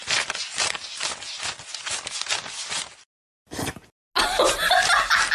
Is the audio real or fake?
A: real